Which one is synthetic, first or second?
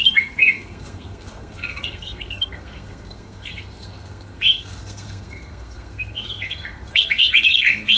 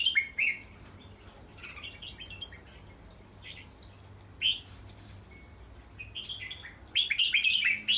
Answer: first